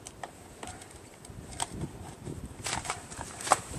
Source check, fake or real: fake